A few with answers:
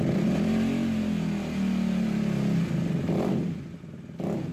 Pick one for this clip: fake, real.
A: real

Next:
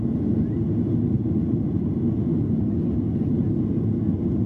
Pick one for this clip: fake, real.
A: real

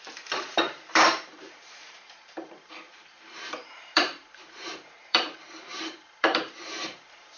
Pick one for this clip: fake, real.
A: fake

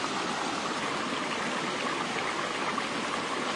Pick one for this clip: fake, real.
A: real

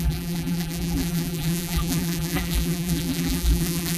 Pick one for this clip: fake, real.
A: fake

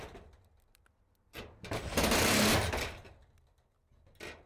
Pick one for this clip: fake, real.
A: real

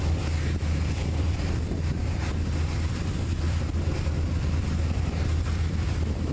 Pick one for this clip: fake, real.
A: fake